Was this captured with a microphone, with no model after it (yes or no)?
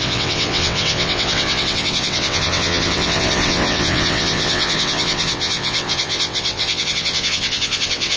no